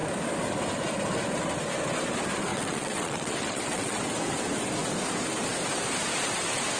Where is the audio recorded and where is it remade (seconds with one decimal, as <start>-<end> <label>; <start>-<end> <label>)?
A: 0.0-2.5 recorded; 2.5-4.0 remade; 4.0-6.8 recorded